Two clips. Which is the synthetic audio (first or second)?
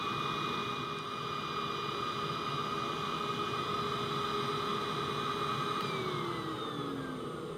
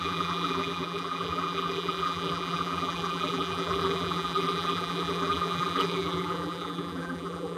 second